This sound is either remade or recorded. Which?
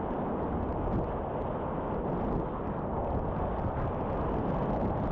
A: recorded